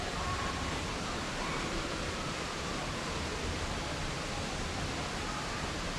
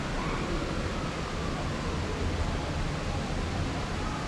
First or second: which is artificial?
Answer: first